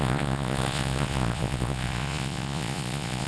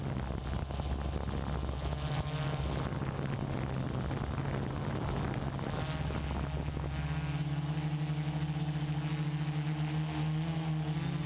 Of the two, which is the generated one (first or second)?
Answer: first